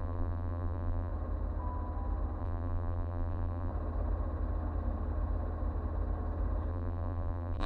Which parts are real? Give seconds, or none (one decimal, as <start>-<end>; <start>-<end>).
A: 1.1-2.4; 3.7-6.7